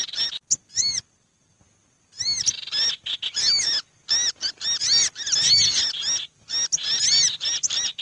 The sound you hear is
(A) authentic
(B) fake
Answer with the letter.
A